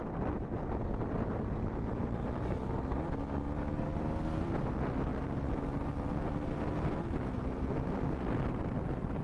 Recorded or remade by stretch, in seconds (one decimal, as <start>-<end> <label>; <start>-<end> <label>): 0.0-9.2 recorded